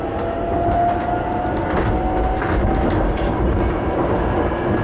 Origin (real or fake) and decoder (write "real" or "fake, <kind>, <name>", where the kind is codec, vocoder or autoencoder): real